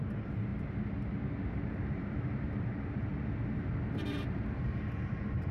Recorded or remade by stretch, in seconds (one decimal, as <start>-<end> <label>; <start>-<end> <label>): 0.0-0.5 remade; 0.5-1.9 recorded; 1.9-3.1 remade; 3.1-3.9 recorded; 3.9-5.5 remade